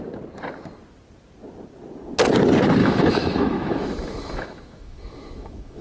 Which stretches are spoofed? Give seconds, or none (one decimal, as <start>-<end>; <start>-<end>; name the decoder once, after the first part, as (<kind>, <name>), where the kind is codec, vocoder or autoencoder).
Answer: 2.8-5.8 (autoencoder, DAC-VAE)